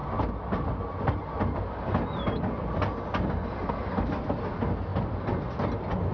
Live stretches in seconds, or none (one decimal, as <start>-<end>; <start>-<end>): 0.0-6.1